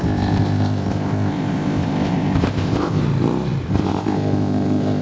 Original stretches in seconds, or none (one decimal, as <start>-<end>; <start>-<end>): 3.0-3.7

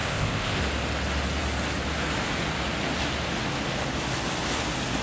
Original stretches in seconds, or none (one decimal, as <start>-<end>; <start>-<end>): 0.6-5.0

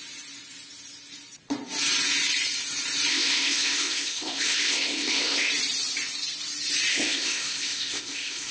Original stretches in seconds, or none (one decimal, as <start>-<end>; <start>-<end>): 0.0-3.1; 5.5-6.9

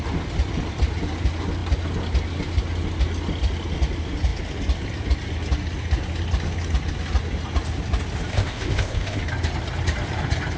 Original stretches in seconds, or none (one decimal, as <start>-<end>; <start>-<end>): 0.0-8.3; 9.2-10.6

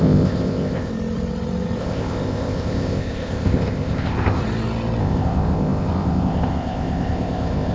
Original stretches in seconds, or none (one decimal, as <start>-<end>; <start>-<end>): 0.9-1.8; 4.4-5.0